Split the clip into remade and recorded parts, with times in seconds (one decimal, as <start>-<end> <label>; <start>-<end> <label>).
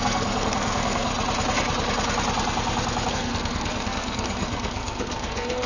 0.0-1.1 remade; 1.1-3.1 recorded; 3.1-5.7 remade